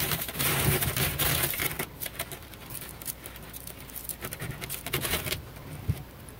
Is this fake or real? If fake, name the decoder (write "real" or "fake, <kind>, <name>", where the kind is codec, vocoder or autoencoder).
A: fake, vocoder, BigVGAN v2